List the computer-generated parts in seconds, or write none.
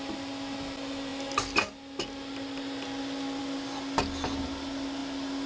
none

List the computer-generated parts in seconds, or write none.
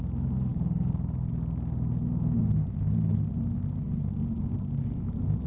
0.5-1.3 (vocoder, BigVGAN v2)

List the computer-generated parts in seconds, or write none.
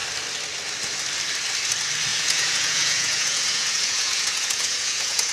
2.1-5.3 (vocoder, Vocos)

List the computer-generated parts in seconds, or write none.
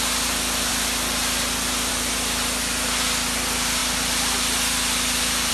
none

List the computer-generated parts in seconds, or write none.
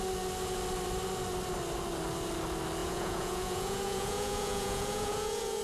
2.8-5.6 (vocoder, Vocos)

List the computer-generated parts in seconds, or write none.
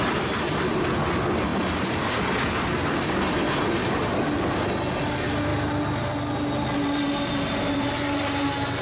none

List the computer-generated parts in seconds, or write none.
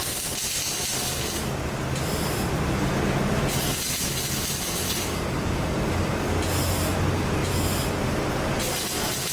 none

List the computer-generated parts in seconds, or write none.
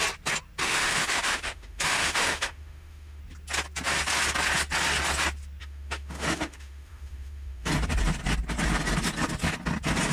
0.6-3.2 (autoencoder, DAC-VAE); 5.6-7.7